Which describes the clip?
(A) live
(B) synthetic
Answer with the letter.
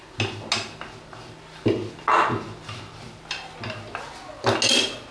A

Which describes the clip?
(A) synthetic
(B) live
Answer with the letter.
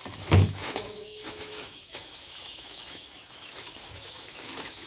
A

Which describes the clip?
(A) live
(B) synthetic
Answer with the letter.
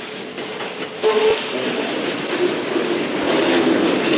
A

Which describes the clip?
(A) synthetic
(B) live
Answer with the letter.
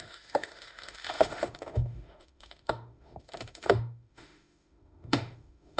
A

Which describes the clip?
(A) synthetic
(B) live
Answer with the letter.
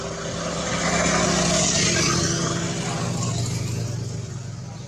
B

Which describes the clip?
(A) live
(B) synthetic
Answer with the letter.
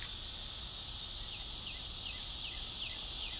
A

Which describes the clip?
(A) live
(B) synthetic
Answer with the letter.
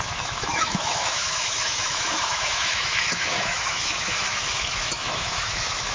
B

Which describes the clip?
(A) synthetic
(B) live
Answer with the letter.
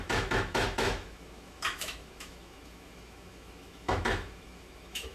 A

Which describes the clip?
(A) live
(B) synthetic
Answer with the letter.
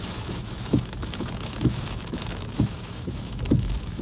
B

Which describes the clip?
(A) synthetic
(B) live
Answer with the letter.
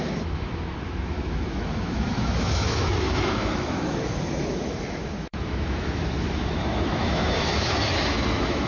A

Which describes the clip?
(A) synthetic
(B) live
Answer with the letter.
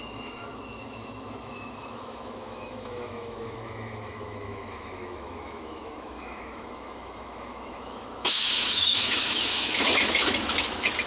A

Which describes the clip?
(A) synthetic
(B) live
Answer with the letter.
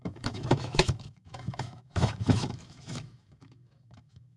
A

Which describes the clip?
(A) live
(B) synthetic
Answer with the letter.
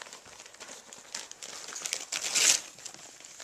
A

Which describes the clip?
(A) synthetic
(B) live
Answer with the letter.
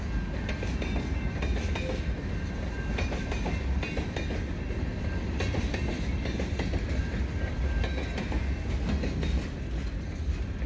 B